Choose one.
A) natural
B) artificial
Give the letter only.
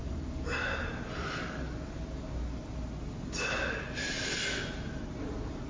A